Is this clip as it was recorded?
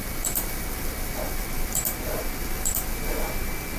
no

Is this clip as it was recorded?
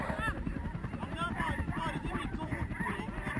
no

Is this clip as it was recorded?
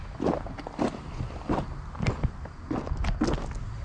yes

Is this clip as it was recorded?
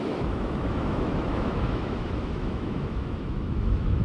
no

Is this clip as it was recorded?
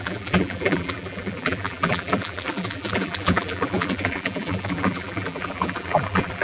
no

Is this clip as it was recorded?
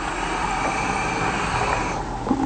yes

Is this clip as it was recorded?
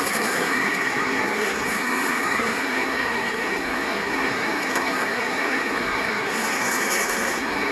no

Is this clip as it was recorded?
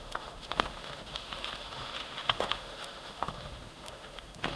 no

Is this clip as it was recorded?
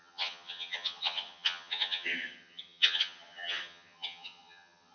no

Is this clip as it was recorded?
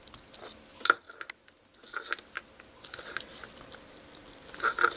yes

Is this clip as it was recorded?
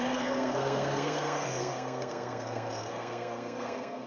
no